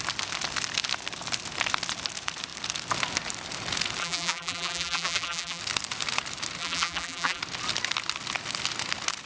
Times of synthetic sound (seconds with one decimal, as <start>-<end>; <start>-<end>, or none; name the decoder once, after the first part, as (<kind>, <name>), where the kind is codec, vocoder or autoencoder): 4.0-5.6 (vocoder, BigVGAN v2); 6.6-7.4